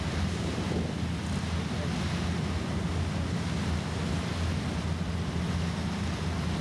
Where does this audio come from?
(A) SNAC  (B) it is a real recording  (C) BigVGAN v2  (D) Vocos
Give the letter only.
B